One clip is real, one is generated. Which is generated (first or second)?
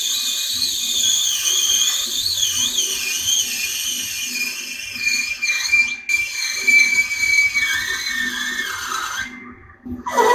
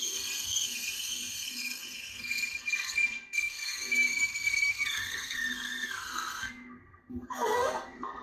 second